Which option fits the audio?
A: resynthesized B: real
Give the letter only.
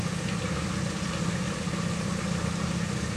B